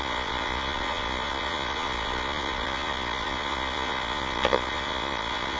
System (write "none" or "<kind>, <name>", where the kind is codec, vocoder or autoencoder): vocoder, Vocos